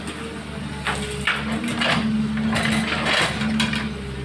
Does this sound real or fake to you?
real